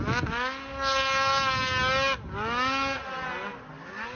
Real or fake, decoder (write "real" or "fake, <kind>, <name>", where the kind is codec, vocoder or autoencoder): real